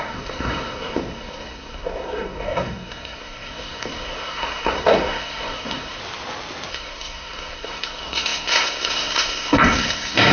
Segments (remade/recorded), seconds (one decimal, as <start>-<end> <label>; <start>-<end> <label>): 0.0-6.0 remade; 6.0-6.7 recorded; 6.7-10.3 remade